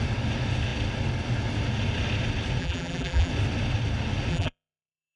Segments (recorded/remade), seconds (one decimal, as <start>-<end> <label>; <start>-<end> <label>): 0.0-2.6 recorded; 2.6-3.3 remade; 3.3-4.3 recorded; 4.3-5.2 remade